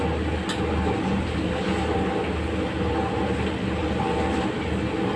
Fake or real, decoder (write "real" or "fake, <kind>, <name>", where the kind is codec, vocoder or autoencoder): real